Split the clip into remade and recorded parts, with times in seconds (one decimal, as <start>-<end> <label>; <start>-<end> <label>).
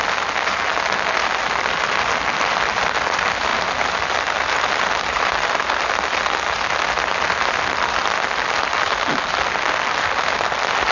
0.0-10.9 recorded